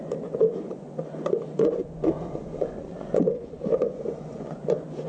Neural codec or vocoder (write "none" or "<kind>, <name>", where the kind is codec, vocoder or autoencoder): vocoder, Vocos